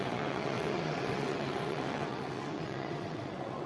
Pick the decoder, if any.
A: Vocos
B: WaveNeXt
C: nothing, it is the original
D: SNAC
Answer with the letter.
B